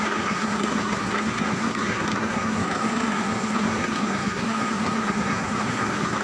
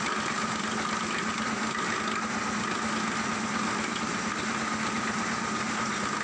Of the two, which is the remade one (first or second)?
first